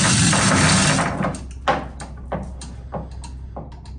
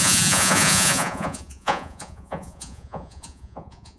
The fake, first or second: second